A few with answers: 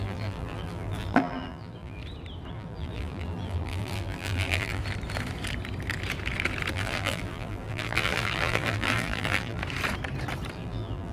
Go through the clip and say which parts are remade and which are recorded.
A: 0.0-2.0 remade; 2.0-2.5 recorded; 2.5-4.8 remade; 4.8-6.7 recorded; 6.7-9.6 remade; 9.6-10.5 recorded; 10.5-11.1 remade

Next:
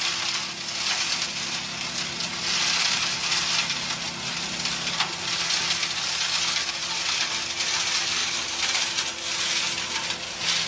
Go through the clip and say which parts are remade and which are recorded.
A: 0.0-8.2 recorded; 8.2-8.9 remade; 8.9-10.7 recorded

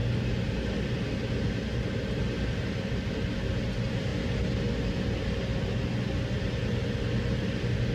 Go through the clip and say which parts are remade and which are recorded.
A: 0.0-7.9 recorded

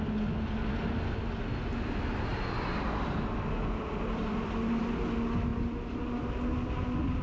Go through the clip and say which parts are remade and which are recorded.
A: 0.0-2.3 recorded; 2.3-4.8 remade; 4.8-7.2 recorded

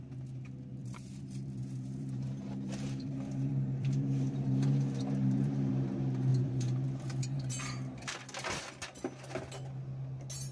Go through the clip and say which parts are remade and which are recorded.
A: 0.0-0.8 recorded; 0.8-5.7 remade; 5.7-6.3 recorded; 6.3-8.2 remade; 8.2-10.5 recorded

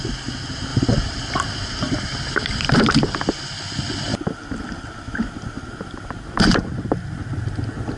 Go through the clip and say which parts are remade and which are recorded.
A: 0.0-0.7 recorded; 0.7-2.8 remade; 2.8-8.0 recorded

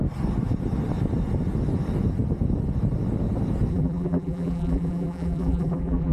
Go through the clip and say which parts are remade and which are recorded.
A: 0.0-3.7 recorded; 3.7-6.1 remade